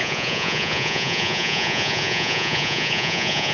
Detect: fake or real fake